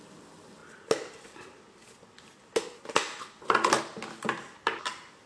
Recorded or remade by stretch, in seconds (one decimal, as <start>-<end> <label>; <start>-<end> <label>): 0.0-5.3 recorded